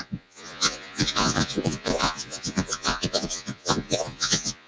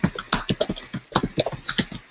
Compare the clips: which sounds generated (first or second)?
first